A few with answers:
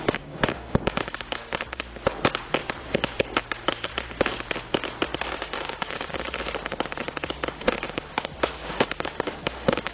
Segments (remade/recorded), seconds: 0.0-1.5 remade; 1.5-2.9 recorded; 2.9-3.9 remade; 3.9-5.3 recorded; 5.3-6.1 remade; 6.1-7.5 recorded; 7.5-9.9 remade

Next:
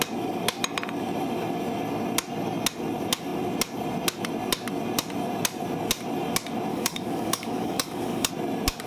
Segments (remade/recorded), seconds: 0.0-6.7 recorded; 6.7-8.3 remade; 8.3-8.9 recorded

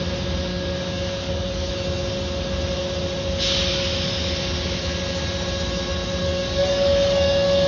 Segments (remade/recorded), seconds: 0.0-0.5 recorded; 0.5-1.7 remade; 1.7-6.2 recorded; 6.2-7.7 remade